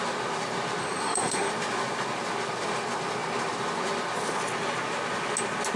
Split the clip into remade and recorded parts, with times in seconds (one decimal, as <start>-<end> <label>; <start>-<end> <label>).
0.0-0.8 recorded; 0.8-1.5 remade; 1.5-5.8 recorded